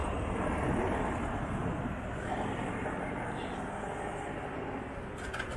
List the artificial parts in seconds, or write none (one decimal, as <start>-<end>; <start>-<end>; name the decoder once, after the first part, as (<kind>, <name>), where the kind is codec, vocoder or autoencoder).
none